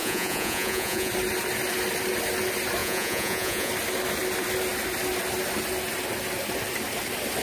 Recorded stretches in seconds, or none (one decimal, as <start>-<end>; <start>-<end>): 1.1-2.8; 3.7-7.4